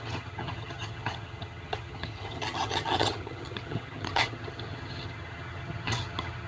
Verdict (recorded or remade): remade